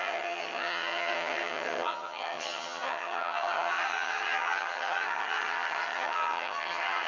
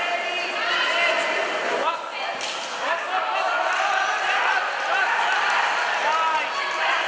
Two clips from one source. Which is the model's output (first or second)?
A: first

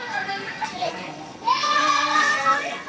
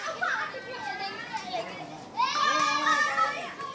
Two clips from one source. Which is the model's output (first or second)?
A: first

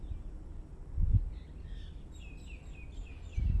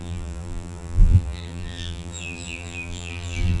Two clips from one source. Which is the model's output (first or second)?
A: second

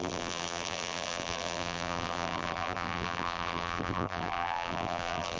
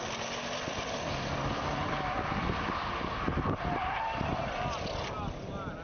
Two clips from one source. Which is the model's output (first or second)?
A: first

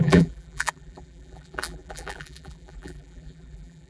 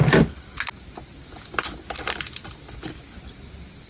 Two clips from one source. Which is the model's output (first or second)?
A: first